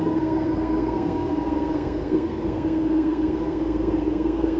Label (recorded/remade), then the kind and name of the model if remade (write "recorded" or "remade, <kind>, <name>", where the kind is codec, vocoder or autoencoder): remade, codec, SNAC